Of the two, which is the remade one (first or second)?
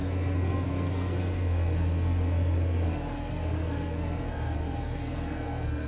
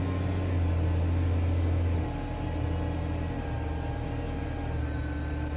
first